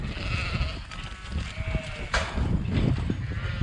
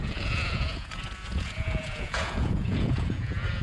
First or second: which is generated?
second